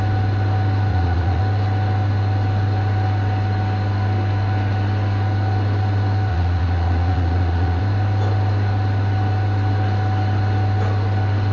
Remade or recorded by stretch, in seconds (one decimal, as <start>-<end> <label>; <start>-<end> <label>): 0.0-0.9 recorded; 0.9-1.4 remade; 1.4-6.3 recorded; 6.3-7.8 remade; 7.8-11.5 recorded